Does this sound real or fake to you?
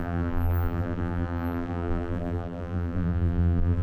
fake